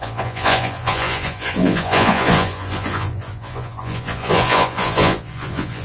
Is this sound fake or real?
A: fake